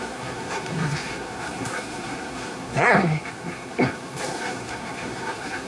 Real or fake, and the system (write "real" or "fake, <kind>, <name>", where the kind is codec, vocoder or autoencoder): fake, codec, SNAC